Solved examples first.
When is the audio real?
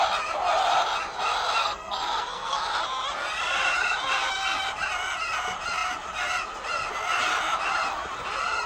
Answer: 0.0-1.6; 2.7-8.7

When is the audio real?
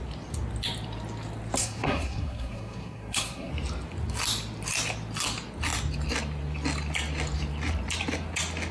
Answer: 0.0-1.6; 3.5-8.7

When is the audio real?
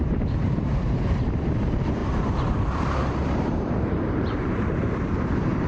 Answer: none